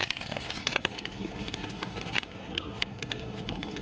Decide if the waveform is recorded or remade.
remade